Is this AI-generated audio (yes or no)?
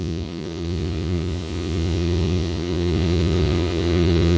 yes